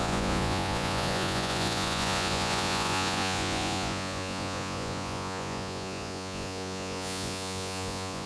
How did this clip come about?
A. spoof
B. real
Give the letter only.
A